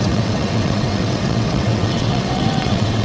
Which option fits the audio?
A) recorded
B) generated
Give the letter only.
B